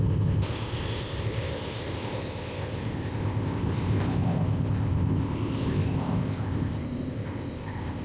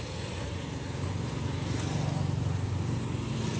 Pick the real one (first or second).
second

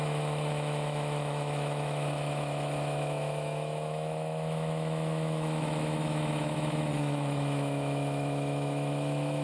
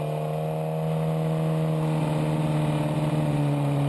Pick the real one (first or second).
second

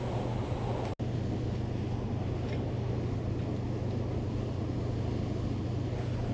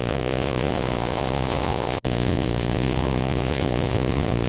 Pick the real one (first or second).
first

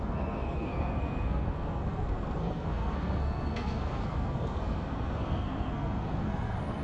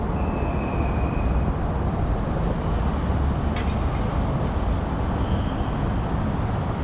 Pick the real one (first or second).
second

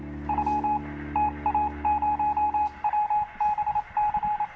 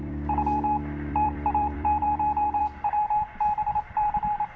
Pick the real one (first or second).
first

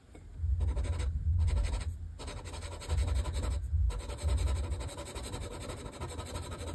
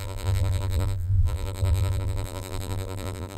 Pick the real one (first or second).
first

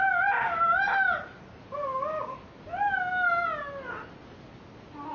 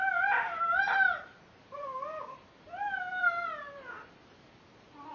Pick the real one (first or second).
first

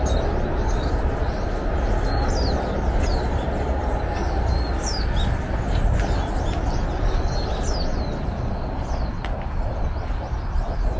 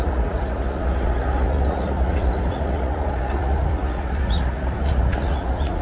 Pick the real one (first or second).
first